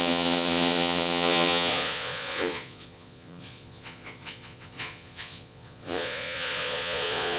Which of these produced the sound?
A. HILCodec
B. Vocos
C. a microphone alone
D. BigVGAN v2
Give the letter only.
B